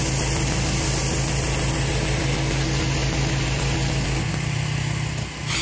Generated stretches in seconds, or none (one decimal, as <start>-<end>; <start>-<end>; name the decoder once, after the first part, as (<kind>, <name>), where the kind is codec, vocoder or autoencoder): none